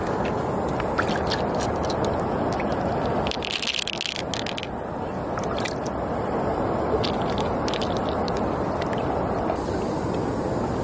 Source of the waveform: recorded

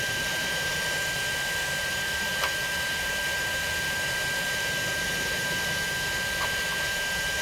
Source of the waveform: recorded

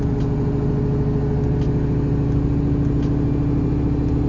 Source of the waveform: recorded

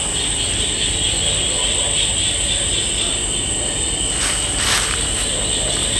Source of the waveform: recorded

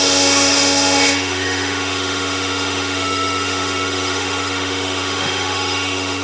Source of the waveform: remade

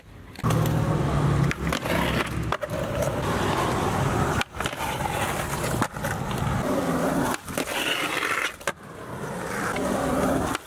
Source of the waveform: recorded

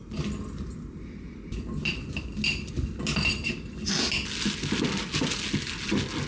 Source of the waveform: recorded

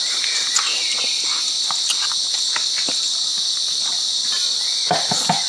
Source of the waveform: recorded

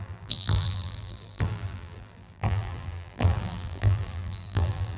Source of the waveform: remade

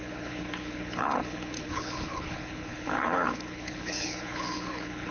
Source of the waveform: remade